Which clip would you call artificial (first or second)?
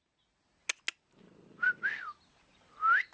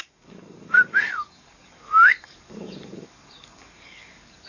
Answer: second